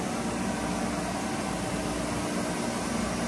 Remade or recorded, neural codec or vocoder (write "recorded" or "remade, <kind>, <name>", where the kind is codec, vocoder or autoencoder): recorded